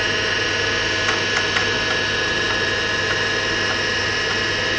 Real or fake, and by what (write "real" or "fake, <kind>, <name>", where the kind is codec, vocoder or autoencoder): real